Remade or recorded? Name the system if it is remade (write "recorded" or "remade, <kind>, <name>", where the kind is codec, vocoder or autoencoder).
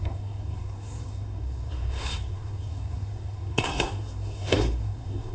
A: remade, codec, SNAC